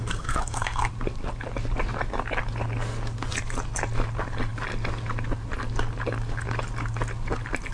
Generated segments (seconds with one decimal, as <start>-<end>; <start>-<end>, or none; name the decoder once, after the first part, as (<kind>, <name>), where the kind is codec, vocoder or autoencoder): 0.0-0.9 (codec, SNAC)